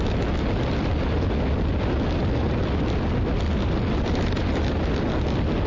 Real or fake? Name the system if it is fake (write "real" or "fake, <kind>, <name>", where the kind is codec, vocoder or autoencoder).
real